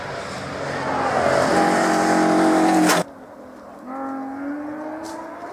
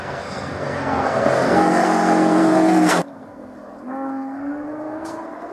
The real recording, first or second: first